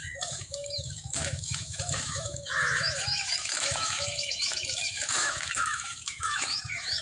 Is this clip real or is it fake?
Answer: fake